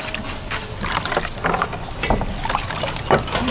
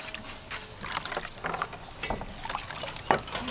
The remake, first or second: first